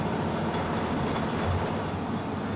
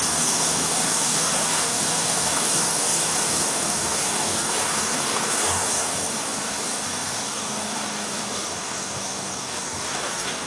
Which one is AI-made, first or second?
second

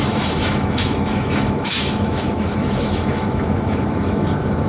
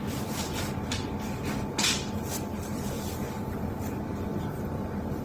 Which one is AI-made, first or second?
first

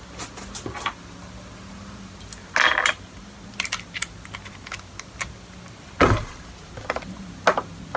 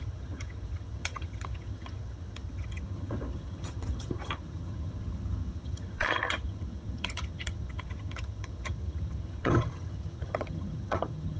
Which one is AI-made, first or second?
second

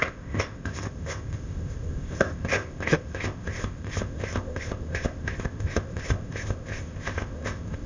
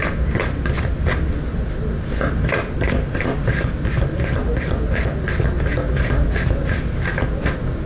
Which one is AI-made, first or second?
first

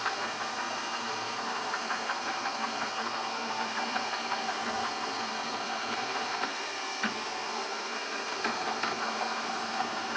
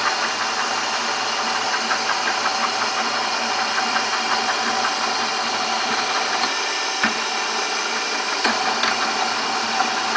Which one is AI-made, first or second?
first